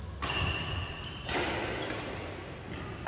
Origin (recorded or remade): recorded